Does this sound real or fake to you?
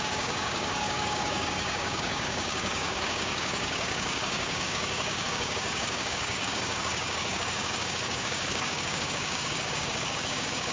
fake